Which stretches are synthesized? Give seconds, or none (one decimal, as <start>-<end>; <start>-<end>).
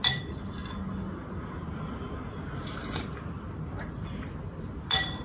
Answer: none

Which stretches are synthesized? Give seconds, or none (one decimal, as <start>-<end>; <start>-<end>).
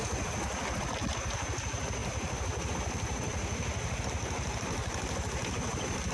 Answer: none